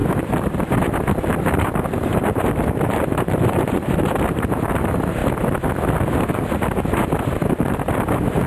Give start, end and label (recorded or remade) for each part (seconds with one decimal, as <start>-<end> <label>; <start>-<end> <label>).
0.0-5.2 remade; 5.2-6.2 recorded; 6.2-8.5 remade